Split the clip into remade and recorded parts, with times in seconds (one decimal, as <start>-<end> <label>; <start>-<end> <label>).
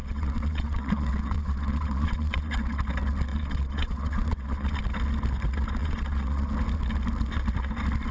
0.0-2.8 remade; 2.8-3.3 recorded; 3.3-4.8 remade; 4.8-5.8 recorded; 5.8-6.5 remade; 6.5-8.1 recorded